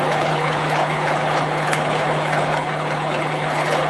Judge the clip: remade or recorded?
remade